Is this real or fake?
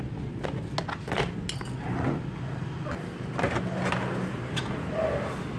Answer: real